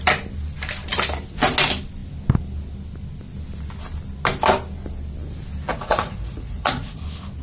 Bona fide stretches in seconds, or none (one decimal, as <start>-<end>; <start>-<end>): 0.0-5.7; 7.0-7.4